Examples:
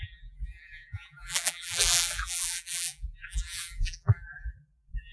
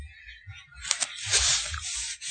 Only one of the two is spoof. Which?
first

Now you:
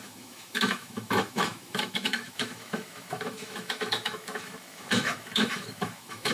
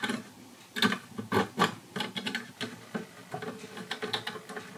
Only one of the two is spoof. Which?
first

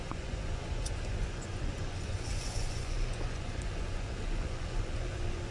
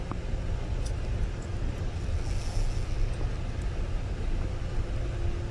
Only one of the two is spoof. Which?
first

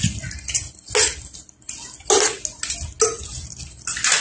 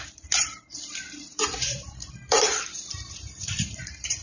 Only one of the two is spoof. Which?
second